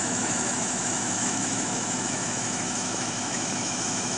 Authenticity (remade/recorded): remade